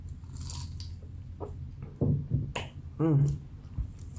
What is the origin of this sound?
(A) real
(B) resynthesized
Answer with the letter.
A